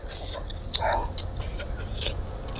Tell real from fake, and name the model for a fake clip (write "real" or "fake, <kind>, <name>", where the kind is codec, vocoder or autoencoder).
real